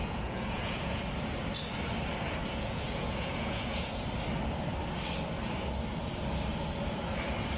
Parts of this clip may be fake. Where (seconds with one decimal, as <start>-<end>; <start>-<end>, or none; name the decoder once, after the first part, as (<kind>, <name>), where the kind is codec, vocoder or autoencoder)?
0.0-1.0 (vocoder, Vocos); 2.4-4.0